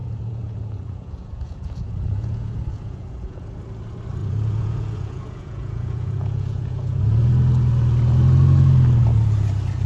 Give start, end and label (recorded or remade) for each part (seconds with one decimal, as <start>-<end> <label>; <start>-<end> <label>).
0.0-3.4 remade; 3.4-4.2 recorded; 4.2-7.0 remade; 7.0-9.9 recorded

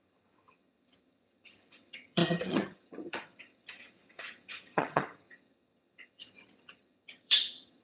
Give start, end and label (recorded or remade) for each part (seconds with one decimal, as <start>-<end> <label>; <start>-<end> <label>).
0.0-7.8 remade

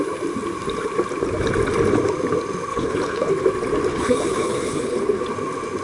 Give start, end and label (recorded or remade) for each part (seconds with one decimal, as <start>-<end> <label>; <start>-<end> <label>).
0.0-2.7 recorded; 2.7-3.3 remade; 3.3-3.9 recorded; 3.9-5.2 remade; 5.2-5.8 recorded

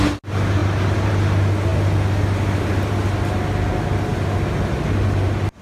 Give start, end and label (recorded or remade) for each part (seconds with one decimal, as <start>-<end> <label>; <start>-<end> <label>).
0.0-5.6 recorded

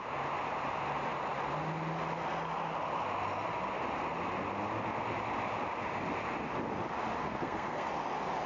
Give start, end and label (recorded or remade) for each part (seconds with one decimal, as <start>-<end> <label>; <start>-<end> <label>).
0.0-7.2 recorded; 7.2-7.9 remade; 7.9-8.5 recorded

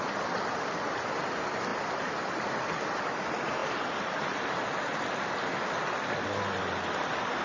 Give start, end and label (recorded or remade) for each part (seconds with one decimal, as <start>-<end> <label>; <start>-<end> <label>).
0.0-7.4 recorded